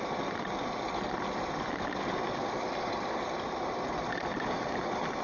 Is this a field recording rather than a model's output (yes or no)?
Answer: yes